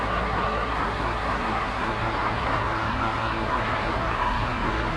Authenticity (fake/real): fake